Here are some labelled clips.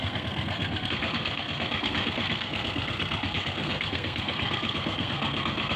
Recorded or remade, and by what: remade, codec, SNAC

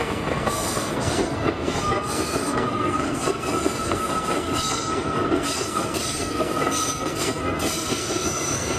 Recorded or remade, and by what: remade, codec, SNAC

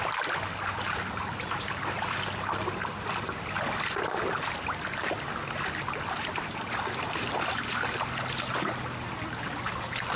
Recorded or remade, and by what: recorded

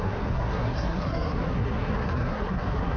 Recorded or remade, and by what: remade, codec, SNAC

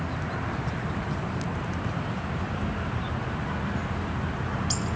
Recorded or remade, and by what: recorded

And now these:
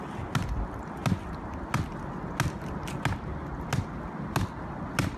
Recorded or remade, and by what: recorded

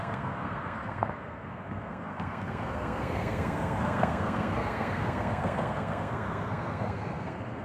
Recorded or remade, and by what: remade, codec, SNAC